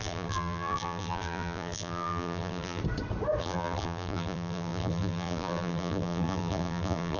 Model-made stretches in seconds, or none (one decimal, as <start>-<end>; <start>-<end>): 0.0-2.8; 3.4-7.2